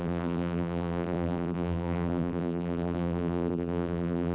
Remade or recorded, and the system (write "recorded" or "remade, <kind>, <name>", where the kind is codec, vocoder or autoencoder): remade, vocoder, BigVGAN v2